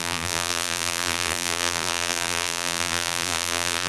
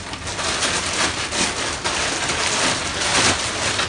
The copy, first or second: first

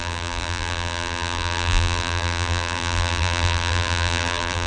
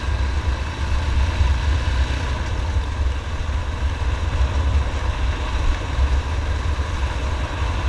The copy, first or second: first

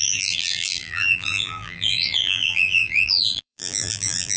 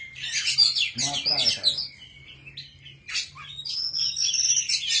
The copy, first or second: first